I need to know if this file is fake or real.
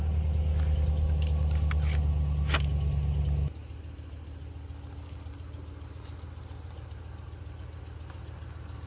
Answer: real